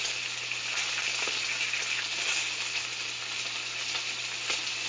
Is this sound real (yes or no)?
yes